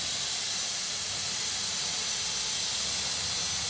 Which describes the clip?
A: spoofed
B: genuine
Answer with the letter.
B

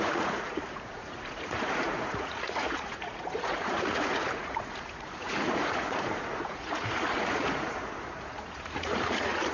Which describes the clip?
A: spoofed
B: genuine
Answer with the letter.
A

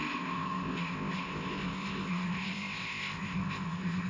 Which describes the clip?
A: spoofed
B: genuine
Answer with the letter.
A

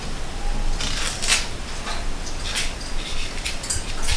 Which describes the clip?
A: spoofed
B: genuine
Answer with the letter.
B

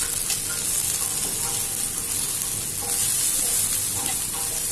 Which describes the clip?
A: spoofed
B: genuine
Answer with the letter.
B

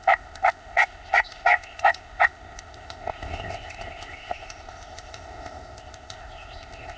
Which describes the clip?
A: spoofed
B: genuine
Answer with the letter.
A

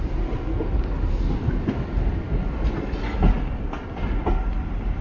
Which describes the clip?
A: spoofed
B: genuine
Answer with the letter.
B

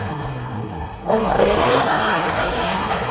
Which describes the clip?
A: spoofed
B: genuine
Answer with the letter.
A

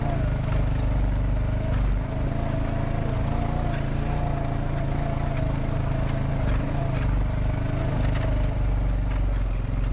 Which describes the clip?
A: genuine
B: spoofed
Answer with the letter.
A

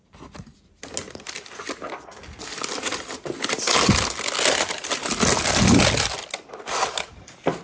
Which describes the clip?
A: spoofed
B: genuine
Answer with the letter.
B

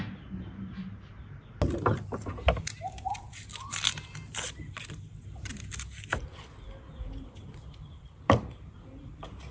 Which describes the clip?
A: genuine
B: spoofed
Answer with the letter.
A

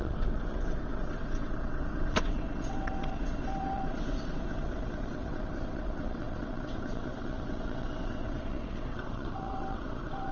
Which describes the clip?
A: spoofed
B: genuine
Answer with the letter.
A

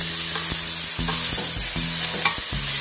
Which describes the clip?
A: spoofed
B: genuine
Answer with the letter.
B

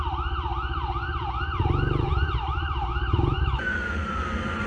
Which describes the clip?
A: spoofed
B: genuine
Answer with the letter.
A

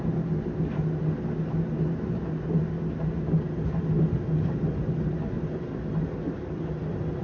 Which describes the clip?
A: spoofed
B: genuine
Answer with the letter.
B